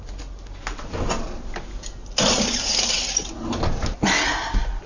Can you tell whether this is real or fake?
real